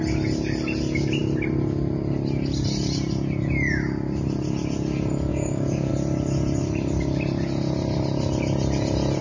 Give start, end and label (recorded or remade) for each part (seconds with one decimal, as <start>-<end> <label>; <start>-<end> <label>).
0.0-5.3 recorded; 5.3-5.9 remade; 5.9-9.2 recorded